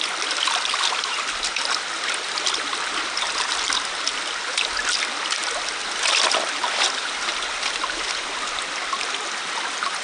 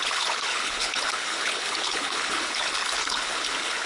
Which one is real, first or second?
first